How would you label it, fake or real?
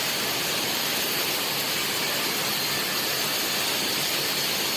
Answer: real